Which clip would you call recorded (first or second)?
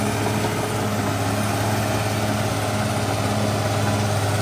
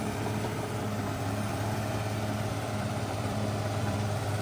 first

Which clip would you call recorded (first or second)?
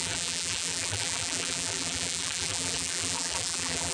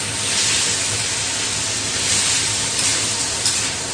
second